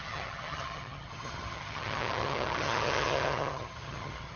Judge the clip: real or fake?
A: fake